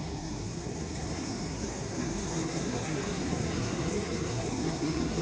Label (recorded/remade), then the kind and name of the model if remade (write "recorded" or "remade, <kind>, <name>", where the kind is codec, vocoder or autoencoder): remade, codec, SNAC